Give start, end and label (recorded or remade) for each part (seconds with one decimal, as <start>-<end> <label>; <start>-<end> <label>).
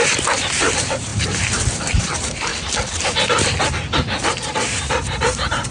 0.0-2.5 remade; 2.5-4.0 recorded; 4.0-5.7 remade